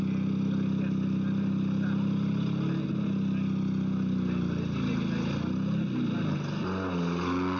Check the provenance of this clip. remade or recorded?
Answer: recorded